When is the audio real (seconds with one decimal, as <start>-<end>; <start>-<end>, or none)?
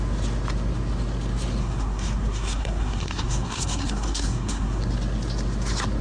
0.0-1.6; 4.8-6.0